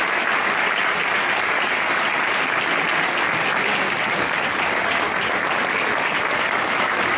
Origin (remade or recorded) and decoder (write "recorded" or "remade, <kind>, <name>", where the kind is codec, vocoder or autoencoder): recorded